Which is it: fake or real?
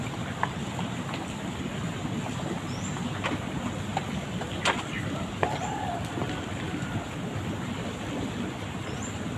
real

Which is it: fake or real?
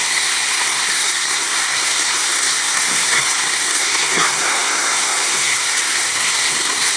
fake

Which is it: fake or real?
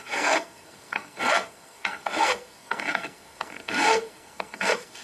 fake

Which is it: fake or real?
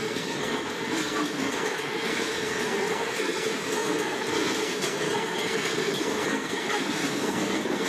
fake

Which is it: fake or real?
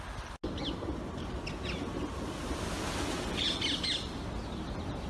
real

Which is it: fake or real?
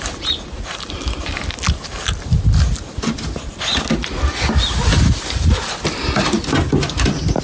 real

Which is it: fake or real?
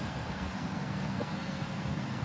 fake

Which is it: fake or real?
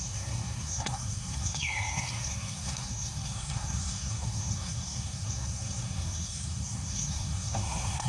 fake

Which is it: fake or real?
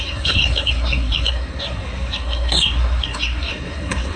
fake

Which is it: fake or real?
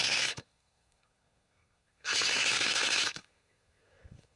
fake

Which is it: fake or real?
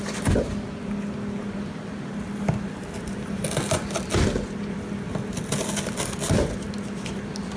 real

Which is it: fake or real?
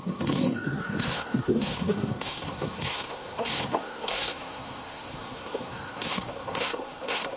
fake